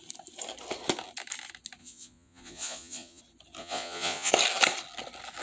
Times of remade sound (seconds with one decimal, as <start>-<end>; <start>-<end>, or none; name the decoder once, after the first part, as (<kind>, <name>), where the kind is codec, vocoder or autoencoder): 1.8-3.2 (vocoder, Vocos); 3.6-4.3